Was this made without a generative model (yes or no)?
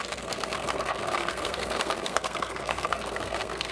no